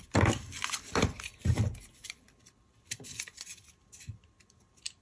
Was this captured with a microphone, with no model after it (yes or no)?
no